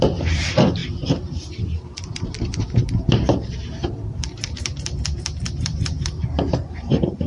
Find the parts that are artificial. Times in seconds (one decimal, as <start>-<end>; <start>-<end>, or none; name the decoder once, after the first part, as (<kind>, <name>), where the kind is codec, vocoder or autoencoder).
0.0-7.3 (vocoder, BigVGAN v2)